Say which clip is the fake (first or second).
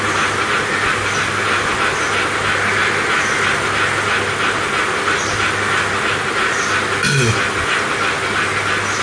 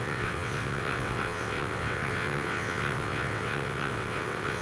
second